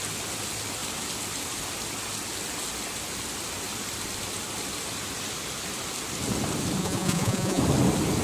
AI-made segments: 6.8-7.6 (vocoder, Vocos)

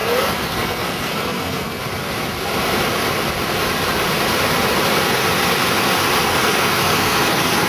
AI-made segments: 0.0-1.8 (codec, SNAC); 6.3-7.7

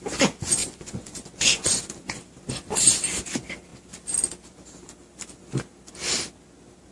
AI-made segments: 0.6-2.2 (vocoder, Vocos)

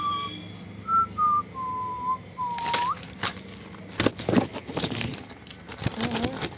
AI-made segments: none

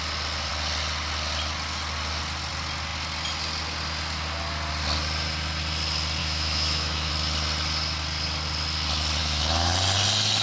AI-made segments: 6.2-7.1 (autoencoder, DAC-VAE); 9.2-9.7

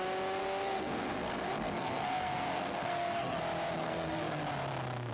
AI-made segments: 0.4-3.4 (codec, SNAC); 3.8-4.4

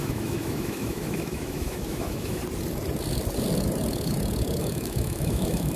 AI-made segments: 0.0-2.4 (autoencoder, DAC-VAE); 4.6-5.8